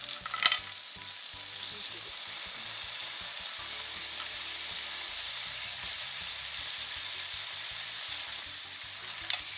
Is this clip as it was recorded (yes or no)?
no